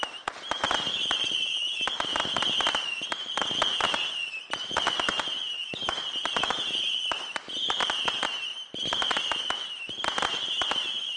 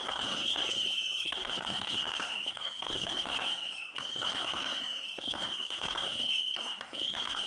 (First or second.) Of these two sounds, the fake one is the second